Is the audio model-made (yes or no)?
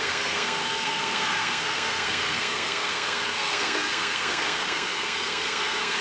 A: yes